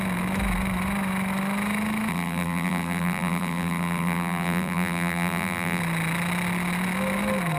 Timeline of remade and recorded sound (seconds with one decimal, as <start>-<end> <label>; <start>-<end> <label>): 0.0-2.1 recorded; 2.1-5.8 remade; 5.8-7.6 recorded